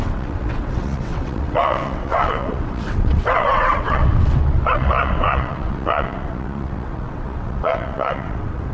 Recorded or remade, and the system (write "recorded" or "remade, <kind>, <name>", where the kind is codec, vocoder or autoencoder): remade, vocoder, WaveNeXt